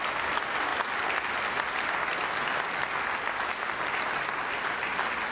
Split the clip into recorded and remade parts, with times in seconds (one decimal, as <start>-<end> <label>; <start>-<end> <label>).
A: 0.0-5.3 recorded